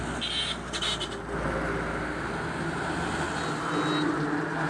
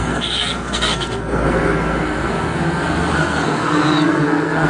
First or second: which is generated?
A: second